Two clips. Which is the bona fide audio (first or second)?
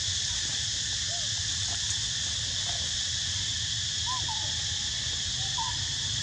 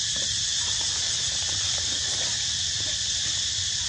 first